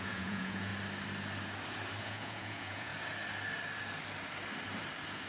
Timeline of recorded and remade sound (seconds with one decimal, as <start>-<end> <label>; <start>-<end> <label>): 0.0-0.7 remade; 0.7-2.0 recorded; 2.0-2.9 remade; 2.9-5.3 recorded